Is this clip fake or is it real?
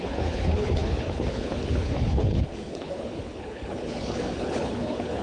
fake